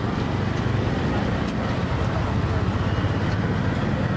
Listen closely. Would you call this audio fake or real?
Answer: real